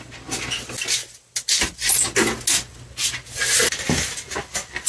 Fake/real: real